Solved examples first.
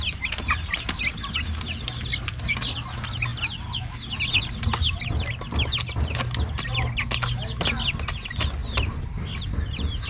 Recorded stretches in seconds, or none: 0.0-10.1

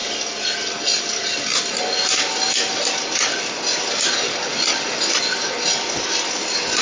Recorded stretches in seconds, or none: 0.0-6.8

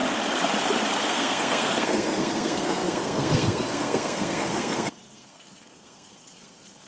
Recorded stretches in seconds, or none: 0.0-1.0

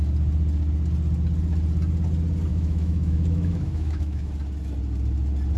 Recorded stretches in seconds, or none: 0.0-2.5; 4.3-5.6

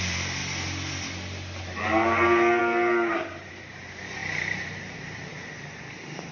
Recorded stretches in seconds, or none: 0.4-1.6

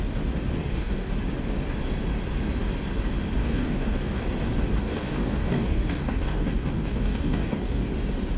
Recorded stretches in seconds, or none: 0.0-0.6; 1.1-3.4; 4.2-4.8; 7.9-8.4